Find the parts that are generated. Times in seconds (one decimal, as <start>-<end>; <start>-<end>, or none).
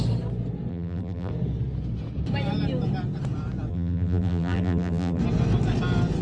0.7-1.3; 3.7-5.2